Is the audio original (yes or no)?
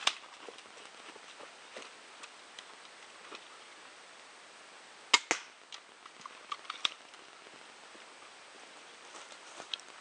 yes